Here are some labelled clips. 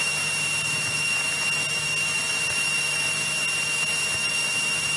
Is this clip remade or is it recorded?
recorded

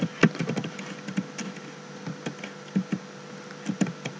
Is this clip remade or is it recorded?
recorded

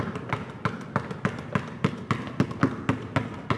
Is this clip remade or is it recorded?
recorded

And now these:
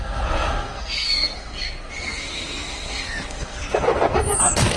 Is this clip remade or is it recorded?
remade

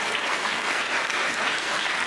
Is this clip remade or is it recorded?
remade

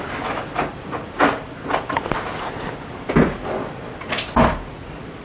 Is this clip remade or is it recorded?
recorded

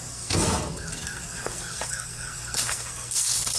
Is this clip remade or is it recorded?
remade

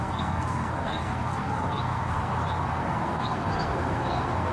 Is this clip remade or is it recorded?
remade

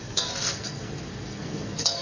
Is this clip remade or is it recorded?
remade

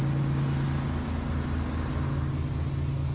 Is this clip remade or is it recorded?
recorded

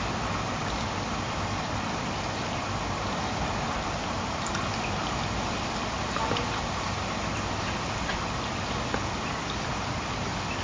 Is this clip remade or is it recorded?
recorded